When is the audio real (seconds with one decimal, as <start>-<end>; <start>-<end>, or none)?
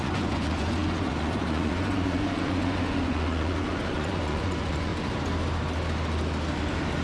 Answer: 4.9-7.0